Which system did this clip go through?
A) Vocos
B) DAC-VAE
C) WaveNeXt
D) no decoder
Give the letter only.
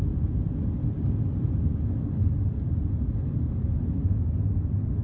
D